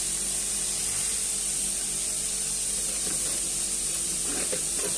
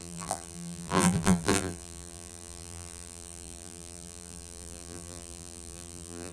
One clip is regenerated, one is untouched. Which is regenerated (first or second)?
second